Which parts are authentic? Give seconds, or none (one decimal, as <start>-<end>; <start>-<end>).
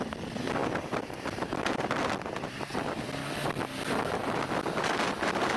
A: 3.2-4.1